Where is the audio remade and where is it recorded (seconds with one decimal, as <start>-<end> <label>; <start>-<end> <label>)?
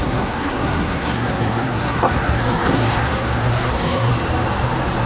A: 0.0-4.1 remade; 4.1-5.1 recorded